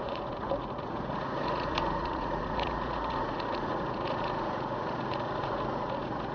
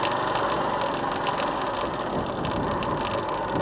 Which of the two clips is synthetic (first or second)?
first